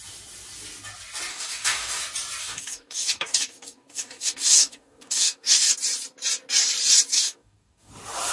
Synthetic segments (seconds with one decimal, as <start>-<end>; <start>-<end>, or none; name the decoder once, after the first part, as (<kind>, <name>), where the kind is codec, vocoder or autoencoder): 1.3-2.0 (codec, DAC); 2.4-5.7; 7.1-7.9

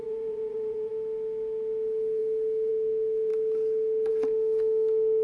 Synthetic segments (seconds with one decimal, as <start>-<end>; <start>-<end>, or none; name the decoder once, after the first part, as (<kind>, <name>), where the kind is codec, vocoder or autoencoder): 0.0-0.9 (vocoder, Vocos)

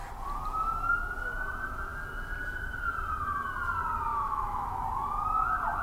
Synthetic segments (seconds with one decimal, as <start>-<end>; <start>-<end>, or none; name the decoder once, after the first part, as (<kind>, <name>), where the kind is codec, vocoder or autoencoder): 4.1-4.8 (autoencoder, DAC-VAE)

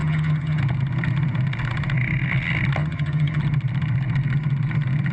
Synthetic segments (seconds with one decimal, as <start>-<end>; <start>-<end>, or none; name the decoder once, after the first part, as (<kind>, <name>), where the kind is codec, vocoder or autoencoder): 0.0-0.6 (vocoder, HiFi-GAN); 2.8-3.4